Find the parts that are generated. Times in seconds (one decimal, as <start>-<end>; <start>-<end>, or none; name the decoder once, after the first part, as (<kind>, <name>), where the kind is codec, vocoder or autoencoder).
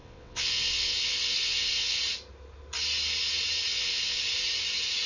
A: 0.0-2.0 (vocoder, WaveNeXt); 3.7-4.2